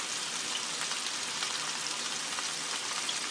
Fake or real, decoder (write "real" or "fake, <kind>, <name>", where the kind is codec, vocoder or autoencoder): real